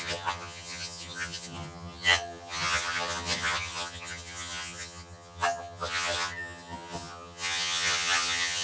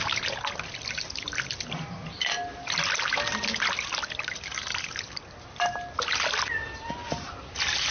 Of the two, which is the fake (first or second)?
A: first